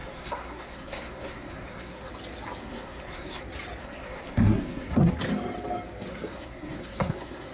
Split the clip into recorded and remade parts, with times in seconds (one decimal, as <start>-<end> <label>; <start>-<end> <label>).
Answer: 0.0-2.1 remade; 2.1-2.6 recorded; 2.6-3.4 remade; 3.4-3.8 recorded; 3.8-5.1 remade; 5.1-6.1 recorded; 6.1-7.5 remade